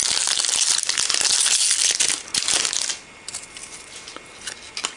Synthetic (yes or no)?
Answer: no